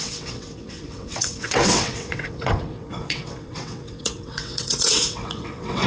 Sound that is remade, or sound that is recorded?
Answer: remade